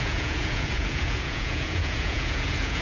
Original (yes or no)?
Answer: no